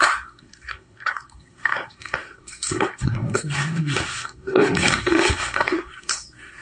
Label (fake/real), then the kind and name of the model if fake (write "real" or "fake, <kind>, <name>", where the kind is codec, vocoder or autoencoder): fake, codec, SNAC